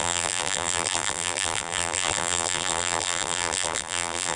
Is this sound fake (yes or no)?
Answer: yes